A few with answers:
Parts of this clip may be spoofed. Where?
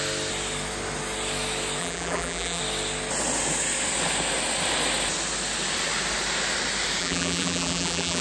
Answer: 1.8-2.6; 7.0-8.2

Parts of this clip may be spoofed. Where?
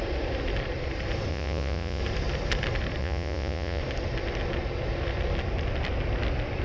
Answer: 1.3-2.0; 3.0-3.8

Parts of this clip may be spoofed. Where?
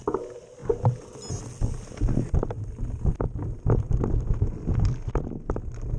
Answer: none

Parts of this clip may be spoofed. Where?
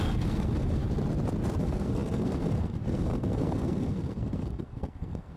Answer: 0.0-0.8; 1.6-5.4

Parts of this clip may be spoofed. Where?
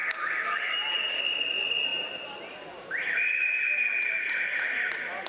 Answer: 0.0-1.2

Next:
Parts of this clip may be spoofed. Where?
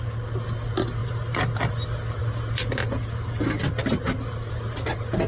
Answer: 1.0-1.7